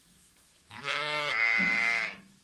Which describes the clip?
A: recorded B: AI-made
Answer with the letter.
B